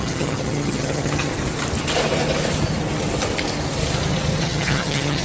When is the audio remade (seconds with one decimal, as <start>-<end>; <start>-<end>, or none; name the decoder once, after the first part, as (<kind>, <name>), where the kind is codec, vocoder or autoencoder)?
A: 0.0-1.3 (vocoder, HiFi-GAN); 4.4-5.2

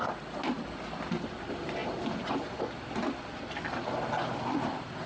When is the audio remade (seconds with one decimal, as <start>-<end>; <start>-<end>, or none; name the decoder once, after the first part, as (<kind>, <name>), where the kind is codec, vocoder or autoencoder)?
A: none

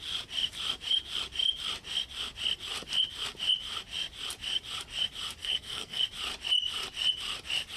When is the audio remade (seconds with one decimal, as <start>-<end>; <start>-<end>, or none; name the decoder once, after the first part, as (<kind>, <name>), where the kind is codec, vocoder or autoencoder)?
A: 5.4-6.0 (codec, SNAC)

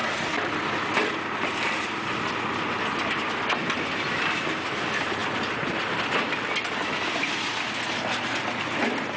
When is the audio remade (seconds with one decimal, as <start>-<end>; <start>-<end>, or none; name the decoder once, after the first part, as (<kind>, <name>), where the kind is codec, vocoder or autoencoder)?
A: none

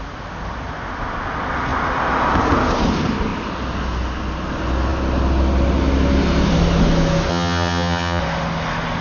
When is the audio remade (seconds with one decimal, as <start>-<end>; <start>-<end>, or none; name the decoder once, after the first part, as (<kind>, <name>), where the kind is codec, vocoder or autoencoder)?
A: 7.3-8.2 (vocoder, HiFi-GAN)

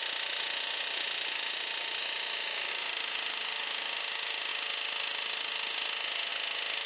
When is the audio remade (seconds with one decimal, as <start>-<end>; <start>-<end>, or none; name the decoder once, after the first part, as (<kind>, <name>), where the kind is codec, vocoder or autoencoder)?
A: 2.0-2.7 (vocoder, BigVGAN v2); 4.5-6.3

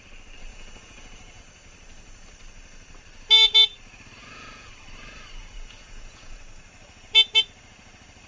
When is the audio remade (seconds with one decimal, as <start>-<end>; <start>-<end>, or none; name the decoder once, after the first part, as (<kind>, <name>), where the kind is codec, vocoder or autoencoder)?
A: 0.5-1.4 (vocoder, Vocos); 4.2-4.7; 5.4-6.4